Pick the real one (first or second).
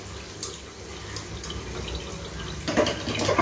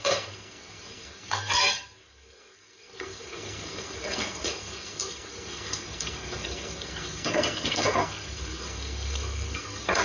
first